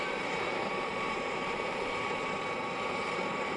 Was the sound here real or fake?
fake